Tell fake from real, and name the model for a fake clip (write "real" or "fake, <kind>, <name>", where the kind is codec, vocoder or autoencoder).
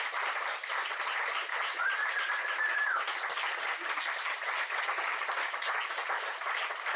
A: real